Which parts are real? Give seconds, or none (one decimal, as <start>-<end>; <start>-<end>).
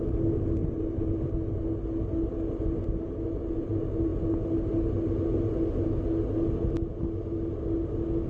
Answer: 0.0-8.3